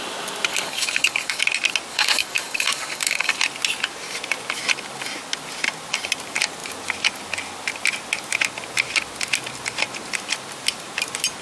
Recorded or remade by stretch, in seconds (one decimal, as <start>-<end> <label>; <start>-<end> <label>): 0.0-0.5 recorded; 0.5-1.4 remade; 1.4-1.9 recorded; 1.9-3.3 remade; 3.3-11.4 recorded